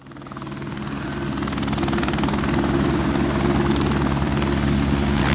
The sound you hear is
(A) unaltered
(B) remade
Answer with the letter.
A